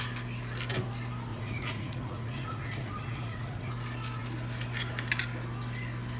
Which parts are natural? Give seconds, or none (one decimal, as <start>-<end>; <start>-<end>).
0.0-1.3; 3.7-6.2